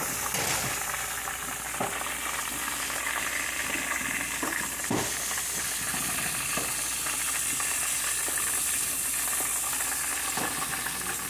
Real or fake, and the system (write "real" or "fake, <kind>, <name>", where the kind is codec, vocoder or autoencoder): real